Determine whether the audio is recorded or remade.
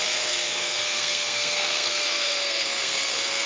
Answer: remade